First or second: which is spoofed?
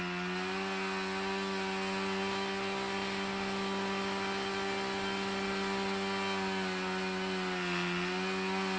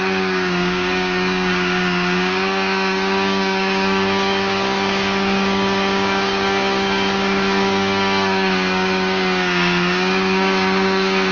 second